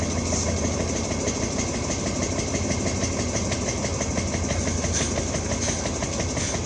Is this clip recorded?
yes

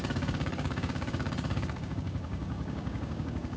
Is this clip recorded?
no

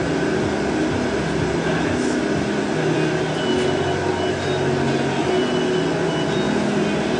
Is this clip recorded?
yes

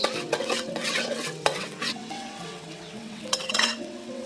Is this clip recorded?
no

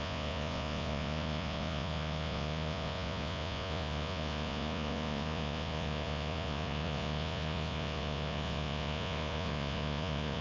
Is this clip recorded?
no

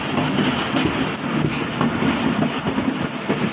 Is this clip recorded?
yes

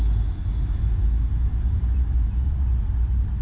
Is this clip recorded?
yes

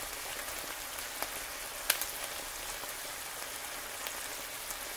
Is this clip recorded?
yes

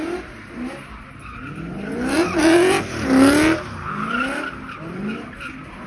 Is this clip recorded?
yes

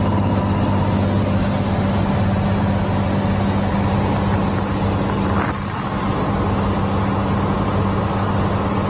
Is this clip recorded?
yes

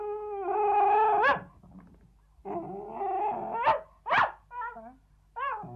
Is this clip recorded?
yes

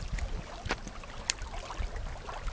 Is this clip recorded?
yes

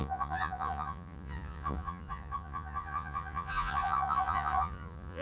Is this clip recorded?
no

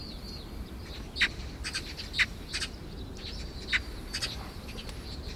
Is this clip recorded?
yes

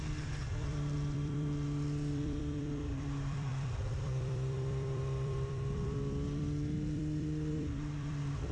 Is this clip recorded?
no